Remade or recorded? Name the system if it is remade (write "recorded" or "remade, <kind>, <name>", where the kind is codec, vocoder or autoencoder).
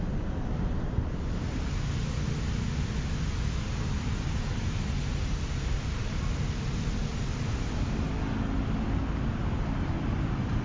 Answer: recorded